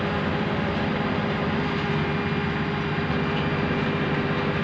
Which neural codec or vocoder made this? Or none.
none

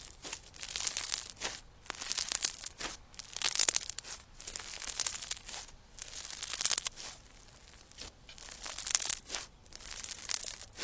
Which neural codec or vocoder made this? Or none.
none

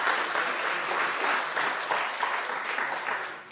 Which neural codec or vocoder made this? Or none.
none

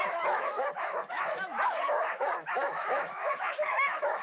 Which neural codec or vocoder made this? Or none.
autoencoder, DAC-VAE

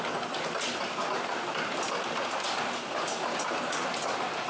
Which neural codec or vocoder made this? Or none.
none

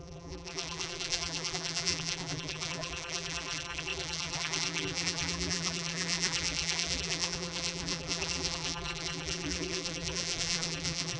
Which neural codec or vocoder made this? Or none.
vocoder, BigVGAN v2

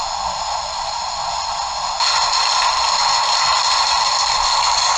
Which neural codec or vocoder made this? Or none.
none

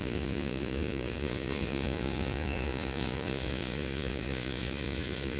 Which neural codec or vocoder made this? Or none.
vocoder, Vocos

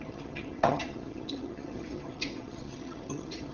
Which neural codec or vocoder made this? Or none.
vocoder, HiFi-GAN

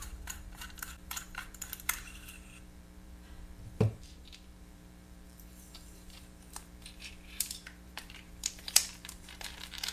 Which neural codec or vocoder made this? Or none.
vocoder, BigVGAN v2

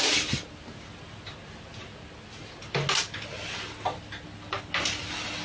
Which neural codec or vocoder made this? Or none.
none